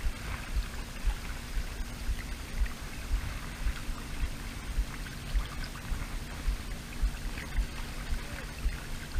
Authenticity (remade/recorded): recorded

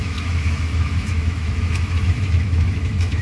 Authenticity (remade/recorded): remade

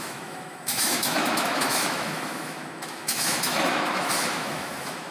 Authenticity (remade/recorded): remade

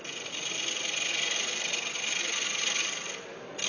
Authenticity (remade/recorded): recorded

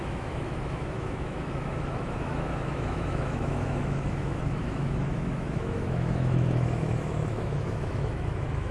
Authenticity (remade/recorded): remade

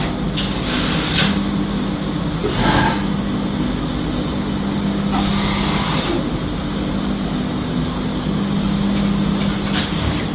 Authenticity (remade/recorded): recorded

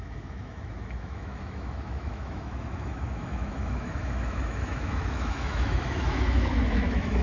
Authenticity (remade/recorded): remade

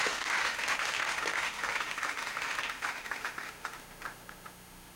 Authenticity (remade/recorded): remade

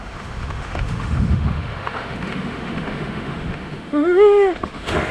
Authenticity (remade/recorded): remade